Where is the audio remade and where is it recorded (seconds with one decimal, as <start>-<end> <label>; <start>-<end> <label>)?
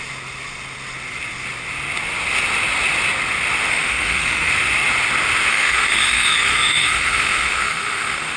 0.0-3.7 recorded; 3.7-4.5 remade; 4.5-5.5 recorded; 5.5-8.4 remade